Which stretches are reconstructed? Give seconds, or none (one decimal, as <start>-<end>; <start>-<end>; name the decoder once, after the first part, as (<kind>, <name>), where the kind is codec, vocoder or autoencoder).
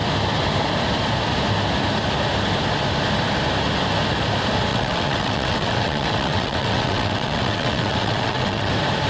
4.7-8.7 (vocoder, WaveNeXt)